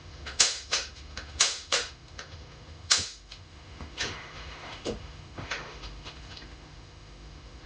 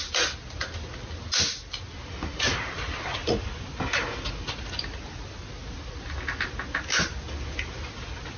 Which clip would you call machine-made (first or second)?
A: first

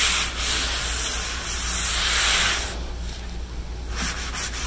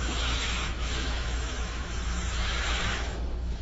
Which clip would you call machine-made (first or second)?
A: second